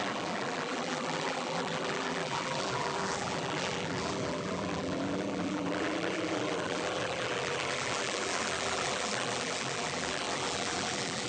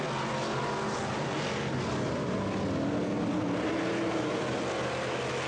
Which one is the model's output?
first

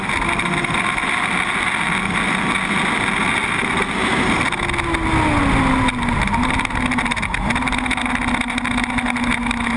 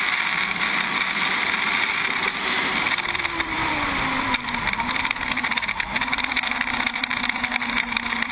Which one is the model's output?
second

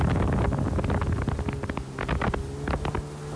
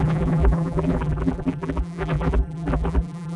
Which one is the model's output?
second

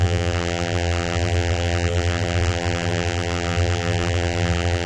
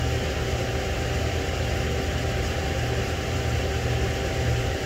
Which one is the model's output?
first